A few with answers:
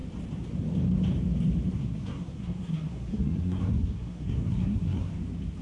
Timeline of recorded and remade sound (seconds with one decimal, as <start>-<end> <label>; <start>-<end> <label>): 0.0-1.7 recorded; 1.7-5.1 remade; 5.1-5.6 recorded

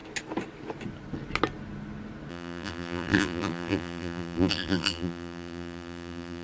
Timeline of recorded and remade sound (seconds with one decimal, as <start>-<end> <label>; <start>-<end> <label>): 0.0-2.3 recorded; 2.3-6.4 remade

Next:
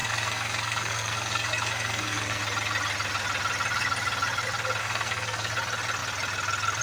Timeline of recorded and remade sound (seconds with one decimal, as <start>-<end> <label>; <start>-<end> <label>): 0.0-2.4 remade; 2.4-4.8 recorded; 4.8-5.5 remade; 5.5-6.8 recorded

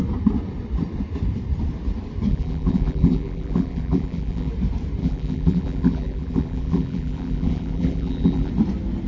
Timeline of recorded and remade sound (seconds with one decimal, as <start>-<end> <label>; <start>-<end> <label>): 0.0-2.3 recorded; 2.3-4.5 remade; 4.5-5.0 recorded; 5.0-8.5 remade; 8.5-9.1 recorded

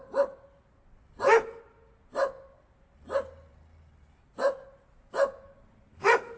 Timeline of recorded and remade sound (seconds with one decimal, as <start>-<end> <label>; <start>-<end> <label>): 0.0-6.4 recorded

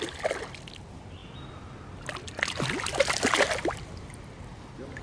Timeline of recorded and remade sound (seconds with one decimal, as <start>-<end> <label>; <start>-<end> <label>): 0.0-5.0 recorded

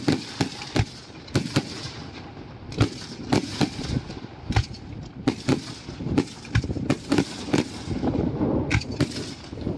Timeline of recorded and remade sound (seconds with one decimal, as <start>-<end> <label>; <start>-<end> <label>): 0.0-9.8 recorded